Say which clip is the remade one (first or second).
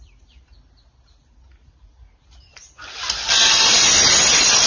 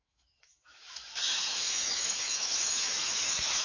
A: second